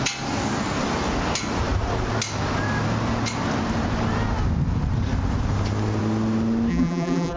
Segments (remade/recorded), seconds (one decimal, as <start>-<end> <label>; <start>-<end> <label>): 0.0-6.7 recorded; 6.7-7.4 remade